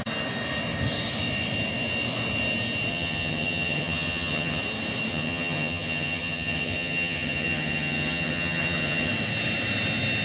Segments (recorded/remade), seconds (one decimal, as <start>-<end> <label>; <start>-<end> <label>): 0.0-2.9 recorded; 2.9-4.6 remade; 4.6-5.1 recorded; 5.1-9.1 remade; 9.1-10.2 recorded